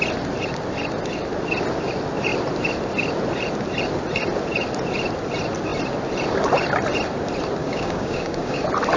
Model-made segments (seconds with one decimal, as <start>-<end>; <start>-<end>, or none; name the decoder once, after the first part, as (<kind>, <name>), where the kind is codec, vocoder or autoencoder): 7.6-8.6 (codec, DAC)

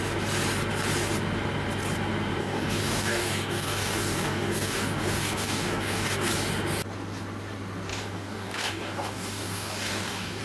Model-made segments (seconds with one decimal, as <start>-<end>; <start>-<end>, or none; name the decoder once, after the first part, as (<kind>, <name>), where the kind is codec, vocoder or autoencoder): 2.4-6.3 (codec, DAC); 7.9-10.4

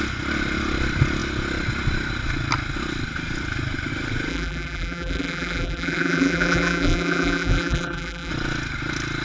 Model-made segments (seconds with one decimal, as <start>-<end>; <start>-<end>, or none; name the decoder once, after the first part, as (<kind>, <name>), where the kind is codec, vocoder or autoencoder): 4.3-8.3 (vocoder, BigVGAN v2)

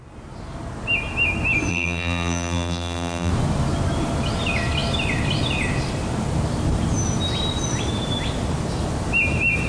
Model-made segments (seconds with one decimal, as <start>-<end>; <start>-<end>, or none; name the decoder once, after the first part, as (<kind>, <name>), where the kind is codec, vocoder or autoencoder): 1.7-3.3 (vocoder, BigVGAN v2)